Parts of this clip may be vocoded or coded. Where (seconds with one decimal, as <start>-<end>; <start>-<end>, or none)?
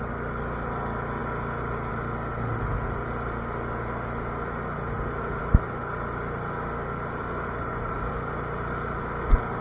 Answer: none